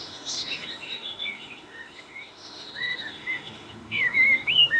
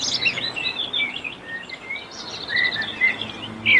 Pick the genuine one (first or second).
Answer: second